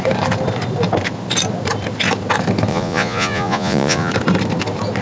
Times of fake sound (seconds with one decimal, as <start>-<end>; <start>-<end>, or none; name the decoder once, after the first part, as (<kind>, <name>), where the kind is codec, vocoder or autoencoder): 2.7-4.1 (vocoder, Vocos)